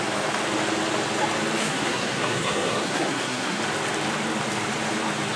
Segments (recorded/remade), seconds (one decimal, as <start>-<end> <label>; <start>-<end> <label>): 0.0-1.6 recorded; 1.6-3.6 remade; 3.6-5.4 recorded